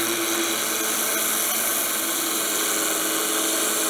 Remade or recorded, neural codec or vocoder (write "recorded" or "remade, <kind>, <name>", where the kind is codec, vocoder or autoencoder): recorded